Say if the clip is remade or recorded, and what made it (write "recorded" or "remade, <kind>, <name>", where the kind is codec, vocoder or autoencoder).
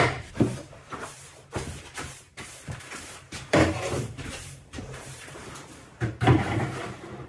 remade, vocoder, BigVGAN v2